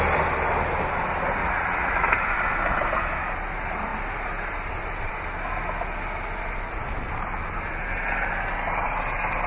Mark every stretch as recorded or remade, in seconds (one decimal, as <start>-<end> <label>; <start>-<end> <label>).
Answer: 0.0-1.4 recorded; 1.4-2.1 remade; 2.1-9.5 recorded